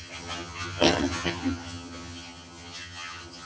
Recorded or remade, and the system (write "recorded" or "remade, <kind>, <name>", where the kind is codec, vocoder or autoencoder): remade, vocoder, HiFi-GAN